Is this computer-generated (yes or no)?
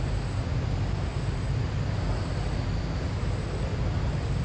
no